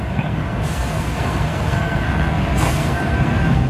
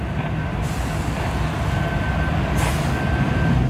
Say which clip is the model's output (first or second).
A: first